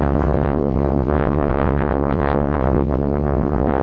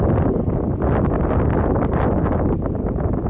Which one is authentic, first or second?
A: second